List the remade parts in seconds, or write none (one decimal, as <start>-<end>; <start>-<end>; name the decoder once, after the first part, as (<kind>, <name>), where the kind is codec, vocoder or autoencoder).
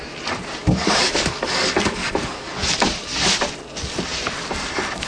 0.6-2.6 (codec, DAC)